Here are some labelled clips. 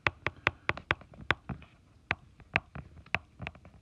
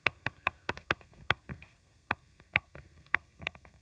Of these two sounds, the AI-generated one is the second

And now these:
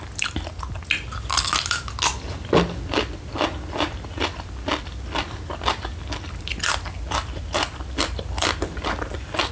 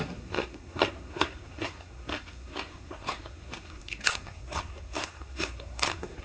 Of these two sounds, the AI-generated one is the second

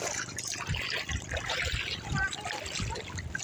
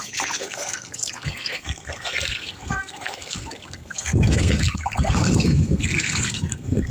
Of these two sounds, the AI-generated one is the second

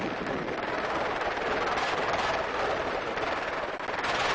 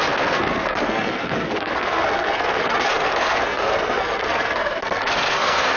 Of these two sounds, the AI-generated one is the second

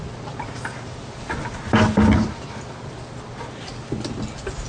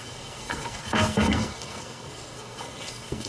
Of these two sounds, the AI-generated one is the second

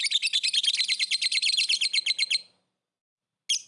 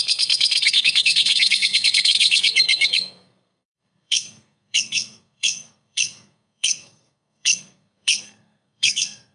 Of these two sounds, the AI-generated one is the second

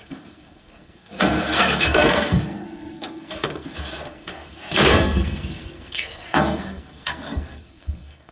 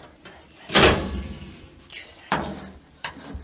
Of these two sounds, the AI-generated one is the first